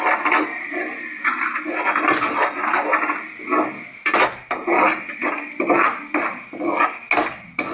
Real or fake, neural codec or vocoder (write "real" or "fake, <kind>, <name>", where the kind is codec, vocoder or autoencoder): real